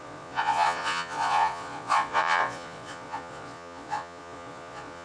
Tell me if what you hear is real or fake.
fake